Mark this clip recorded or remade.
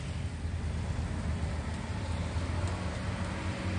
recorded